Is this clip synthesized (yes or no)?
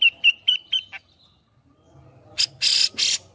no